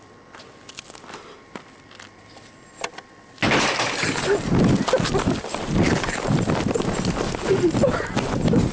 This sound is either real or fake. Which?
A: real